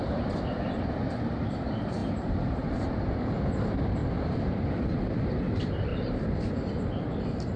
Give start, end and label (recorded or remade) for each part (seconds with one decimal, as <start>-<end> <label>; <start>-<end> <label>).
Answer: 0.0-7.6 remade